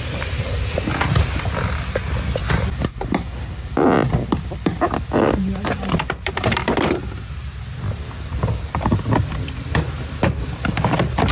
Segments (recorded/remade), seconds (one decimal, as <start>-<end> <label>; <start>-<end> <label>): 0.0-2.4 recorded; 2.4-7.0 remade; 7.0-11.3 recorded